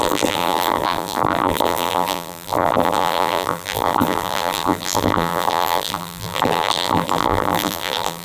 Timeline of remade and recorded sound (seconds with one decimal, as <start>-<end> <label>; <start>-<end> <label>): 0.0-8.2 remade